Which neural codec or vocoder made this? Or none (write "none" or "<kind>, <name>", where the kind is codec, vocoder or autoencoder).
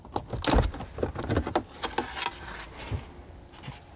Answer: none